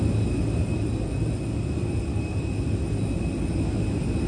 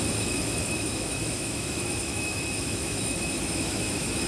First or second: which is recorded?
first